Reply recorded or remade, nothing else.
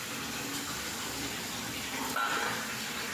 recorded